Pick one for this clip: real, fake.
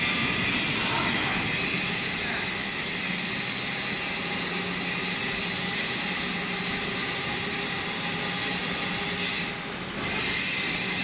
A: real